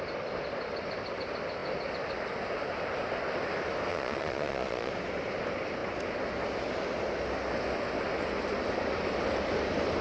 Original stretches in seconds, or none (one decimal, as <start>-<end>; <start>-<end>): 0.0-3.9; 4.9-10.0